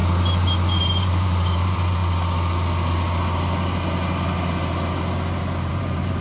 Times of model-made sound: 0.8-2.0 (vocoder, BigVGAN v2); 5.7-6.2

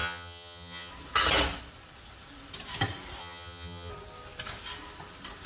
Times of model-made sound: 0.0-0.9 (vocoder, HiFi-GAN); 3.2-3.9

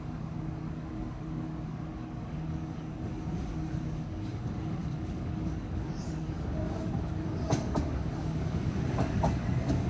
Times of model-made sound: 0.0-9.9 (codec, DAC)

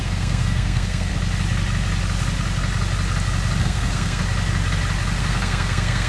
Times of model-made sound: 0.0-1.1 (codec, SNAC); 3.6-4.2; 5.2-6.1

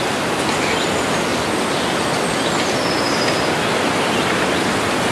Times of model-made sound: none